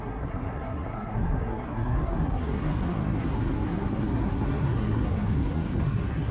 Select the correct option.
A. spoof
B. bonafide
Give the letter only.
A